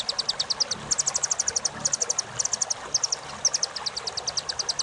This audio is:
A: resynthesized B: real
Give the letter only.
B